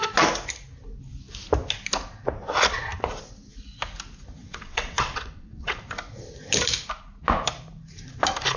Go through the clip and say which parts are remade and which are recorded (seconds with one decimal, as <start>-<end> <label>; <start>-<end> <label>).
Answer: 0.0-4.4 recorded; 4.4-5.8 remade; 5.8-8.6 recorded